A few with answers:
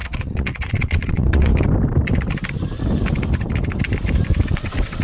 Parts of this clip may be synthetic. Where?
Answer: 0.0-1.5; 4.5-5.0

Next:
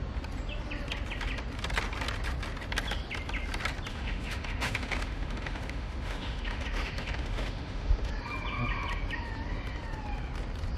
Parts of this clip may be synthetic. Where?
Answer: 3.9-8.1

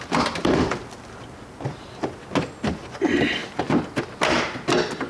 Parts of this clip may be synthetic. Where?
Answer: none

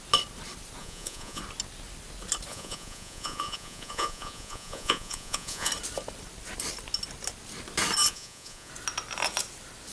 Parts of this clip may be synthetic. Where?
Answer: 0.8-1.4; 2.5-5.7; 8.1-8.7